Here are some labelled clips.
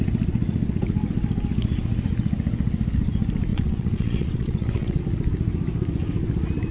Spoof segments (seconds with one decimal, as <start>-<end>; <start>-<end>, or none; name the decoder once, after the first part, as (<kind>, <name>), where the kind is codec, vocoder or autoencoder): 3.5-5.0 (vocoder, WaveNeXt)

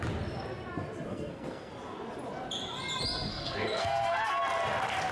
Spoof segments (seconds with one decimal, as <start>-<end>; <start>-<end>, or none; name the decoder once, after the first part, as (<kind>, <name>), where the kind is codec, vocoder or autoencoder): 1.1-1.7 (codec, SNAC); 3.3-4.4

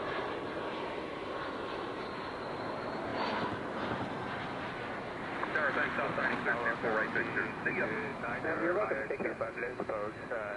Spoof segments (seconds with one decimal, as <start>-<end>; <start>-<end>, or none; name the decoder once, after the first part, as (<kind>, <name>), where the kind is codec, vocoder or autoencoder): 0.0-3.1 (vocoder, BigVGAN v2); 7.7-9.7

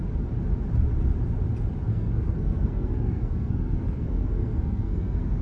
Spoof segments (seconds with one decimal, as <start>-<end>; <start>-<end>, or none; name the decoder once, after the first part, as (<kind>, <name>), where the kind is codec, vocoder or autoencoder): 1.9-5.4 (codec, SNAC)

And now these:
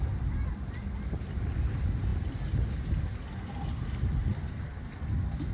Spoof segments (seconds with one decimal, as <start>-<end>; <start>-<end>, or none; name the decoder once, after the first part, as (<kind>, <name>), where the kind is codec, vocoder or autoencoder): none

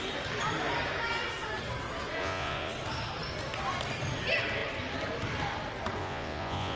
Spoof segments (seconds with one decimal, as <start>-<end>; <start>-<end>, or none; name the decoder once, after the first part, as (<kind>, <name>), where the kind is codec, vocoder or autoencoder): 2.2-2.7 (vocoder, Vocos); 6.0-6.8